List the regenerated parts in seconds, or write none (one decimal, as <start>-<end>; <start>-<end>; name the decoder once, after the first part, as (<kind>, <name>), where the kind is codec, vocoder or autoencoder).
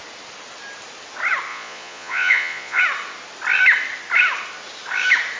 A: 1.5-2.8 (vocoder, Vocos)